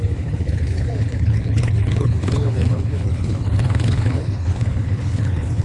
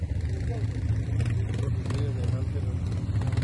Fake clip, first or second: first